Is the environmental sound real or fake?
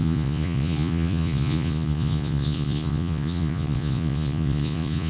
fake